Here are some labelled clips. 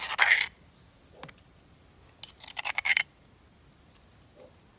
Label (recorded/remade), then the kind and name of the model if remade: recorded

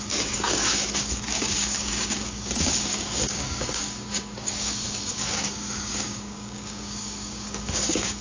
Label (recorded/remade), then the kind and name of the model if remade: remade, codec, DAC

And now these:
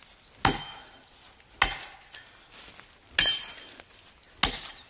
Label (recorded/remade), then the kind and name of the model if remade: recorded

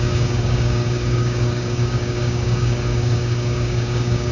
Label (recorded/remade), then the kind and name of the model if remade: remade, codec, DAC